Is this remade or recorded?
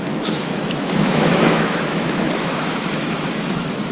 remade